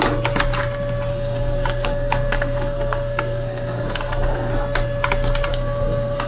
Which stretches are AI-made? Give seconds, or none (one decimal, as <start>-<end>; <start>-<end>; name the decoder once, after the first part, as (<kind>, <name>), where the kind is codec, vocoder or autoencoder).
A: 1.1-4.5 (codec, SNAC); 5.5-6.3

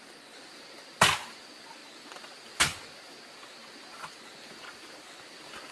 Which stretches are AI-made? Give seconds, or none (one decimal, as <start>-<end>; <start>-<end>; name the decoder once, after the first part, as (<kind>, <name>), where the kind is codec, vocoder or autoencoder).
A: none

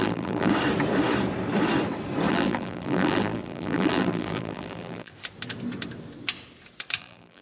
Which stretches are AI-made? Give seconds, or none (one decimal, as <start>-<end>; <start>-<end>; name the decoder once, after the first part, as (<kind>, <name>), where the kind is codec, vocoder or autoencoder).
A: 0.0-0.5 (vocoder, BigVGAN v2); 2.3-5.1; 7.0-7.4

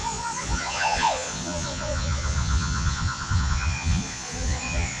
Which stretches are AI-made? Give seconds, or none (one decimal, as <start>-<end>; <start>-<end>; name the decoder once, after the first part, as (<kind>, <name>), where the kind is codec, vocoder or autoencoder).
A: 0.0-5.0 (vocoder, Vocos)